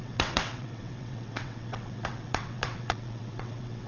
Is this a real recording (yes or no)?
no